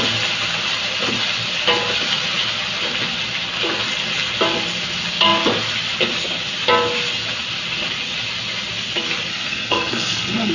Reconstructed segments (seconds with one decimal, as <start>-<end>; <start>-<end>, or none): 9.3-10.5